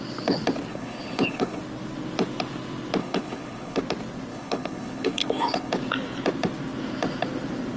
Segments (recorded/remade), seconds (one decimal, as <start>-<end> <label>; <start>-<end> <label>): 0.0-0.7 recorded; 0.7-1.6 remade; 1.6-3.0 recorded; 3.0-3.8 remade; 3.8-4.3 recorded; 4.3-5.7 remade; 5.7-7.8 recorded